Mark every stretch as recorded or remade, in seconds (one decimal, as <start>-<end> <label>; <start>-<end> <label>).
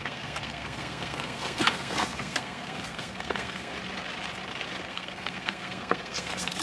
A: 0.0-3.7 remade; 3.7-4.9 recorded; 4.9-6.6 remade